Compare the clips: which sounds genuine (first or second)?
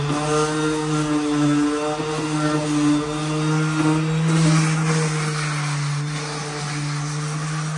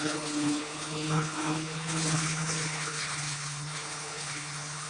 first